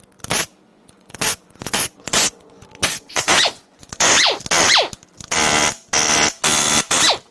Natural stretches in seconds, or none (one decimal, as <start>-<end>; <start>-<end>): 0.0-0.7; 4.4-7.3